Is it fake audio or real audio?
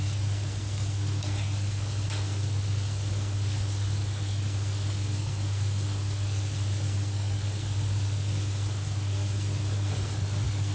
fake